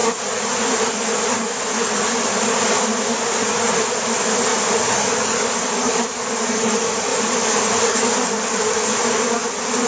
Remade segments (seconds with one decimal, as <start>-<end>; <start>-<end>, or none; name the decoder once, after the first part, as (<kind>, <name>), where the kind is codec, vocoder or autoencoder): 0.0-2.4 (vocoder, BigVGAN v2); 4.5-6.4